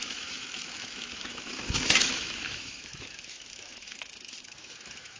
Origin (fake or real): fake